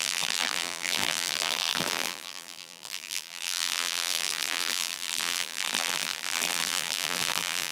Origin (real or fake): fake